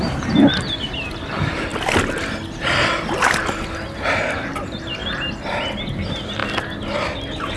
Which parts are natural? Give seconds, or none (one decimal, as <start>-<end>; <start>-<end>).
0.0-7.6

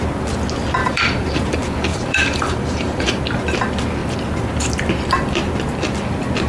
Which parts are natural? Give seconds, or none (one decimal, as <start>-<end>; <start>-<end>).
0.0-0.8; 1.5-1.9; 3.2-6.5

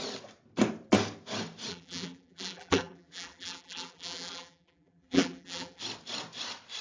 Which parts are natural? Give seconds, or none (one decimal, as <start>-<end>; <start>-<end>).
0.0-1.7; 5.8-6.8